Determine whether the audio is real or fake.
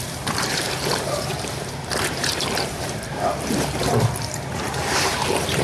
fake